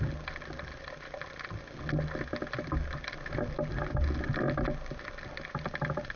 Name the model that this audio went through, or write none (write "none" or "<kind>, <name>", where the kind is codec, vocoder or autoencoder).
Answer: none